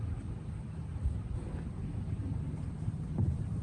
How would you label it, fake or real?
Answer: fake